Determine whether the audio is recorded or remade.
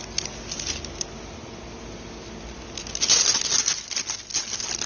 recorded